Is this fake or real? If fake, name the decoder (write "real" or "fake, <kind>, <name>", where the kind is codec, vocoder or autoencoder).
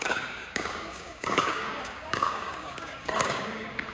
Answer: fake, codec, DAC